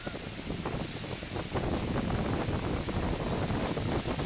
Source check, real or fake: real